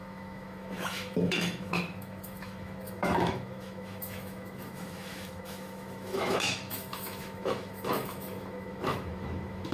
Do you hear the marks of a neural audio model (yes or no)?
yes